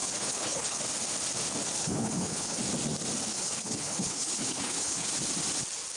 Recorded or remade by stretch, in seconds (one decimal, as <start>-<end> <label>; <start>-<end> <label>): 0.0-0.8 remade; 0.8-1.8 recorded; 1.8-2.6 remade; 2.6-3.3 recorded; 3.3-5.1 remade; 5.1-6.0 recorded